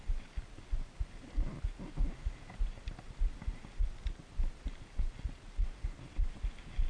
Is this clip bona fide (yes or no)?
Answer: yes